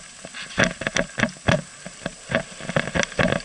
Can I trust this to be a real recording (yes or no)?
yes